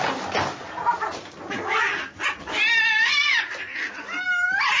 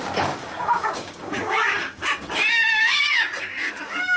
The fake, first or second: second